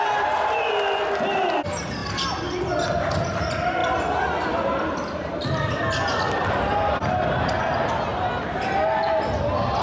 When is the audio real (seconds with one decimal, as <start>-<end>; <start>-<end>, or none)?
0.0-9.8